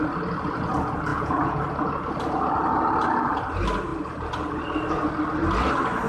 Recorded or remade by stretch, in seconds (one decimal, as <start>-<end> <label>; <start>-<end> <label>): 0.0-1.1 recorded; 1.1-1.6 remade; 1.6-6.1 recorded